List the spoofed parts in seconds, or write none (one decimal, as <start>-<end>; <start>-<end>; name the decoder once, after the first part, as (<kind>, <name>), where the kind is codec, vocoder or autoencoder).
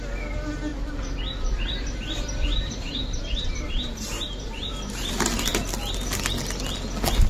0.7-5.1 (vocoder, BigVGAN v2)